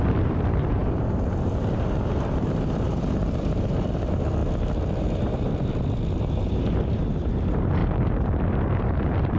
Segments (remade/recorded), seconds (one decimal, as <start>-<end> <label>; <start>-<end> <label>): 0.0-4.4 remade; 4.4-5.0 recorded; 5.0-5.5 remade; 5.5-6.2 recorded; 6.2-7.8 remade; 7.8-8.5 recorded; 8.5-9.4 remade